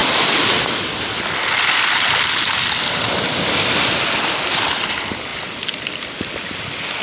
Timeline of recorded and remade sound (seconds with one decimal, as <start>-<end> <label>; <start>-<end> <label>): 0.0-7.0 recorded